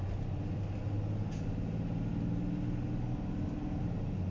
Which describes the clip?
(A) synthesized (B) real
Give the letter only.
B